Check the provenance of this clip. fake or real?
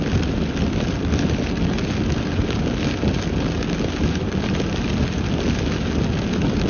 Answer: real